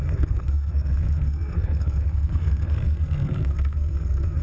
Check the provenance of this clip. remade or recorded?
remade